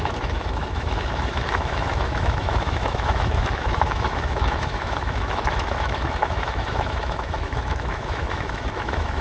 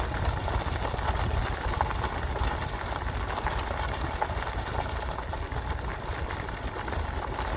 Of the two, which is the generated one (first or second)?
first